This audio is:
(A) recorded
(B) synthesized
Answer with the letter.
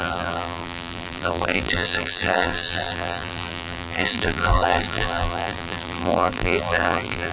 B